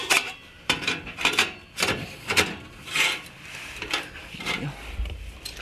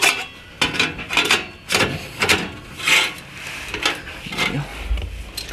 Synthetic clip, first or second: first